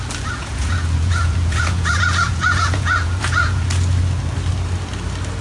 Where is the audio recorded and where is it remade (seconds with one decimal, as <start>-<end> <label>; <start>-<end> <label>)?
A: 0.0-0.4 recorded; 0.4-3.6 remade; 3.6-5.4 recorded